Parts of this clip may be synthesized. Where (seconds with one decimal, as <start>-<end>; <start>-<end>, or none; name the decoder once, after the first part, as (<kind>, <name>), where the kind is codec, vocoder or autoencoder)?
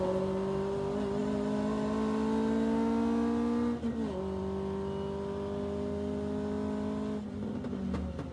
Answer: none